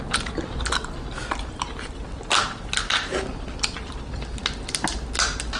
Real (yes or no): yes